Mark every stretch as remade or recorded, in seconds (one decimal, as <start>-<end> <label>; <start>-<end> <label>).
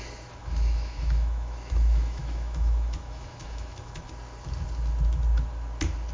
0.0-0.4 recorded; 0.4-4.1 remade; 4.1-6.1 recorded